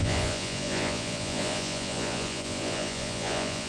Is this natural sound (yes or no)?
no